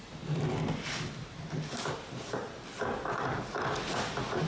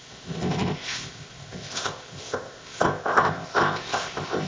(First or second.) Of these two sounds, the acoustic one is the first